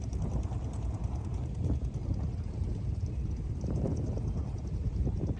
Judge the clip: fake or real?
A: fake